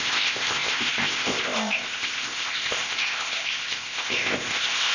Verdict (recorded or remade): remade